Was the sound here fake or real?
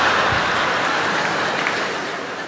real